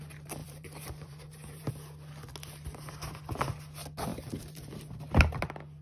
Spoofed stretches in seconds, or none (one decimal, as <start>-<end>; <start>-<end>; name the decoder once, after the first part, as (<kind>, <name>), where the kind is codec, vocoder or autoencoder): 0.4-1.7 (vocoder, BigVGAN v2); 4.1-4.7